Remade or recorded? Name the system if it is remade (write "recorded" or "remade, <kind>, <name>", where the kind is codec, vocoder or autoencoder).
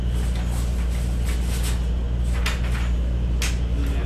recorded